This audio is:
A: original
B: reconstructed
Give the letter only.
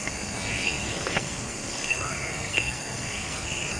B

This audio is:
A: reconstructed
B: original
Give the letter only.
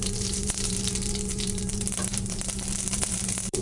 A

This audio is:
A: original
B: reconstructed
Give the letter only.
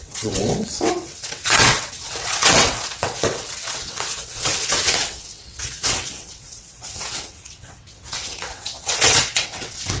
B